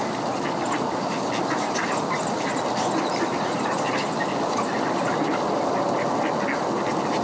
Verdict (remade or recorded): recorded